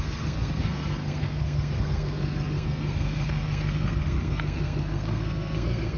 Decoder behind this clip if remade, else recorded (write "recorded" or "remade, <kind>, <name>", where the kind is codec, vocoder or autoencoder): remade, codec, SNAC